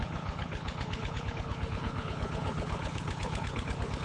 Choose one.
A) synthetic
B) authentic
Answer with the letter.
A